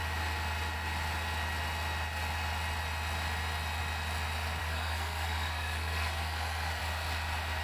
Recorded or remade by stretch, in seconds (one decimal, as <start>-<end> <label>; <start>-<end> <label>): 0.0-4.6 recorded; 4.6-6.8 remade; 6.8-7.6 recorded